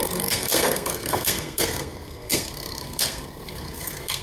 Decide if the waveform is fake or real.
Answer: fake